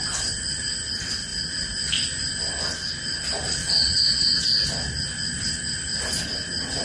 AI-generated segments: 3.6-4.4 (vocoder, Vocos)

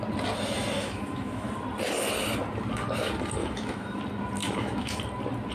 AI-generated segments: 0.8-1.5 (autoencoder, DAC-VAE); 3.4-4.0; 4.4-5.0

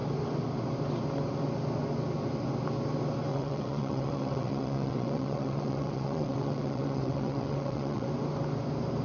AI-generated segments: 3.3-8.1 (vocoder, WaveNeXt)

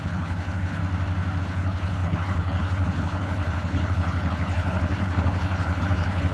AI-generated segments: 0.0-0.8 (codec, HILCodec); 1.4-6.3